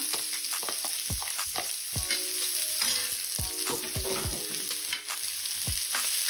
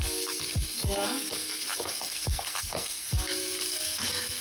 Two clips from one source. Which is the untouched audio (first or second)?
first